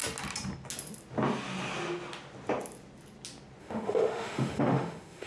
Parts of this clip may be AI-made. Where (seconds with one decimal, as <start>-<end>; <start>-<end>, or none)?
3.6-5.3